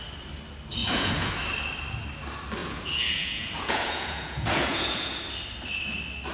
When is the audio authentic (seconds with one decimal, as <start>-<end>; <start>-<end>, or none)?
0.0-0.8; 1.3-2.6; 5.2-6.3

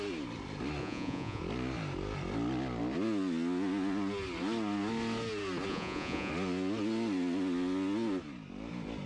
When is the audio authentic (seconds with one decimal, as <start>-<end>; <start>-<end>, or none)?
0.0-0.8; 1.4-5.7; 6.3-9.1

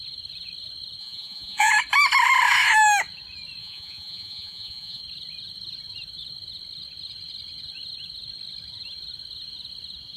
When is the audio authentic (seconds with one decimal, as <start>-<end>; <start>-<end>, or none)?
0.0-1.0; 1.7-3.6; 5.0-10.2

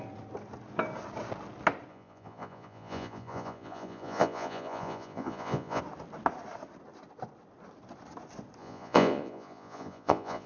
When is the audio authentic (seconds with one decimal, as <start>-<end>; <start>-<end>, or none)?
0.0-1.9; 5.8-8.6

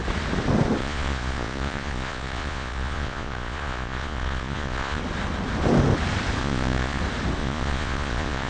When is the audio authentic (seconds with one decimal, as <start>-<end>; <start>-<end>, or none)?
0.0-0.8; 5.0-6.4; 7.0-7.4

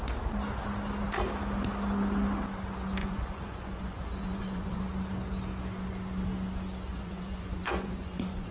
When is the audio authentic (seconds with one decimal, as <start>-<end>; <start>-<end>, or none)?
0.0-3.0; 4.8-6.9

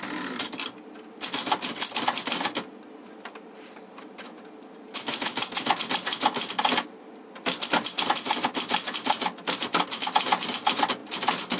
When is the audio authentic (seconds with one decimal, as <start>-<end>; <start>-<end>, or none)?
0.0-11.6